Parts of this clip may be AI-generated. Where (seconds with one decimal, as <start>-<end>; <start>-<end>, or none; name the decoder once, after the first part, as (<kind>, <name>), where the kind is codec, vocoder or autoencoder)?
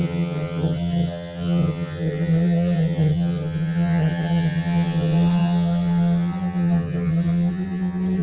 0.0-8.2 (vocoder, HiFi-GAN)